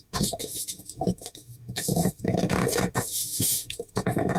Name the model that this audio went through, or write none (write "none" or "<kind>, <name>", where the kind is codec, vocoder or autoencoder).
autoencoder, DAC-VAE